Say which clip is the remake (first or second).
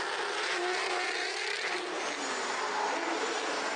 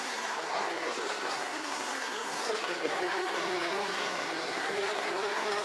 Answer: second